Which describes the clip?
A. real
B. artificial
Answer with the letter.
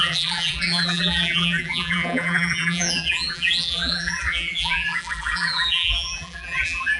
B